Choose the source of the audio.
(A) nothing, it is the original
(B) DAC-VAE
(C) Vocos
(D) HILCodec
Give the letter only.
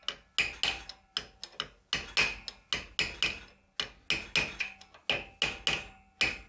A